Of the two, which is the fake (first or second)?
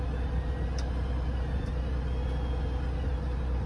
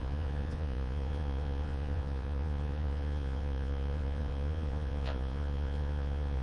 second